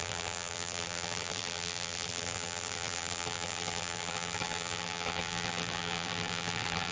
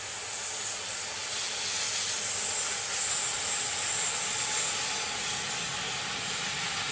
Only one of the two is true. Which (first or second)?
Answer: second